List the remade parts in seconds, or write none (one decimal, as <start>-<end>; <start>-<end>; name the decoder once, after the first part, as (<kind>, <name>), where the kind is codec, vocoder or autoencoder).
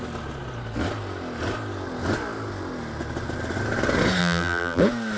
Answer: 4.2-4.8 (vocoder, BigVGAN v2)